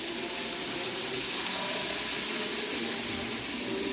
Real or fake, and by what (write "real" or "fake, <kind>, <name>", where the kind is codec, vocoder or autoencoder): real